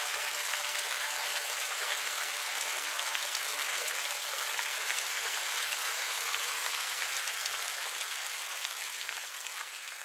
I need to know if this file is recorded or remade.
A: remade